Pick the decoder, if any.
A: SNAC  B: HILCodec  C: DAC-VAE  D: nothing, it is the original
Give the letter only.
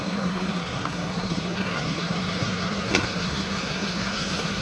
A